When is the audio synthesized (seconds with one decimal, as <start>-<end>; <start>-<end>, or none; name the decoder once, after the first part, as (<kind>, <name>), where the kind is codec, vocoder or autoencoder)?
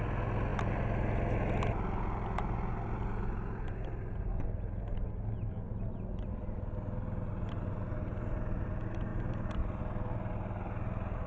none